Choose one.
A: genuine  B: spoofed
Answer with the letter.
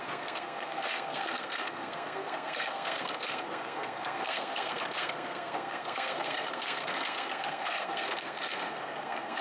B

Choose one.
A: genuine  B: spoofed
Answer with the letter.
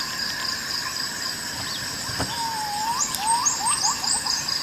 B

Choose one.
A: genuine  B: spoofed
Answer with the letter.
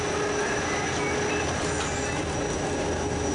A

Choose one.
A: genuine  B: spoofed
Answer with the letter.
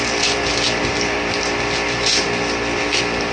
A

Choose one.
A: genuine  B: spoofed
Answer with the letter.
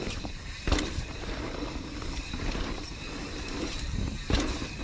B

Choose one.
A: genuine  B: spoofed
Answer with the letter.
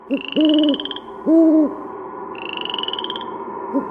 A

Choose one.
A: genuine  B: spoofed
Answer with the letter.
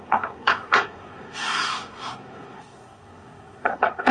B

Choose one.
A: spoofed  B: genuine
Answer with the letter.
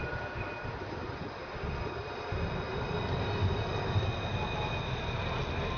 B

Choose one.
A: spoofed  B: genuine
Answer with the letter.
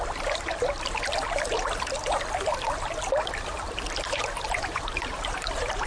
B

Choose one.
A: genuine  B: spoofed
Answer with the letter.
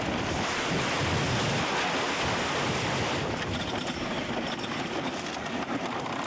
A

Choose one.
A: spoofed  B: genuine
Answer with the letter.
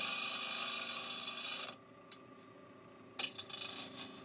B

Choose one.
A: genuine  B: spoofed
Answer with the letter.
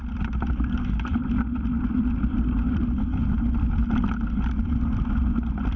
A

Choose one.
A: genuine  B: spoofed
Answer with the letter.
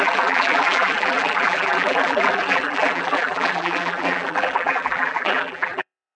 B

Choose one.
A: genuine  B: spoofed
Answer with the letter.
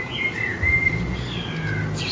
A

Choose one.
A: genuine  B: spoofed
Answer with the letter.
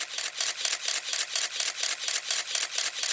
A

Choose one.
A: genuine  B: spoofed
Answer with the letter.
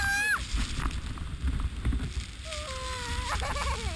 A